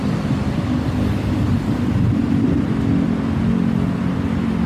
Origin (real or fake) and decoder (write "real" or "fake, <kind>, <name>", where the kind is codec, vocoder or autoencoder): fake, vocoder, BigVGAN v2